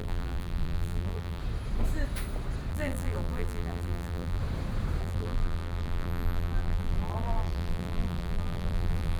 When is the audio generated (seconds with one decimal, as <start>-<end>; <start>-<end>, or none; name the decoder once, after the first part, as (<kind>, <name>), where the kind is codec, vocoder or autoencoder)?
0.0-1.4 (vocoder, BigVGAN v2); 2.7-4.4; 5.0-9.2